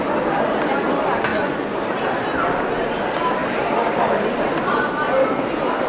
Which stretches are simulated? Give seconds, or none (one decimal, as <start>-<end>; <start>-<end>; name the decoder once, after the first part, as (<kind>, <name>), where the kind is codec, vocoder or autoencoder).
1.3-1.8 (vocoder, Vocos)